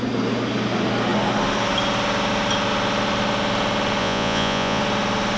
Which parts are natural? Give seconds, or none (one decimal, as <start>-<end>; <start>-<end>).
0.0-4.0; 4.8-5.4